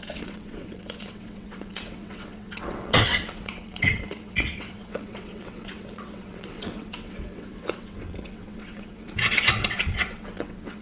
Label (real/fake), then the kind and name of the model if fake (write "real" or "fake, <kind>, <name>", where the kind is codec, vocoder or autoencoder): fake, vocoder, WaveNeXt